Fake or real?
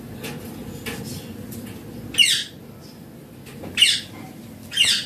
real